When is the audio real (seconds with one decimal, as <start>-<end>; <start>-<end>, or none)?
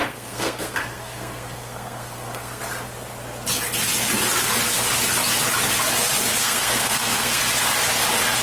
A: 2.6-6.4; 7.4-8.4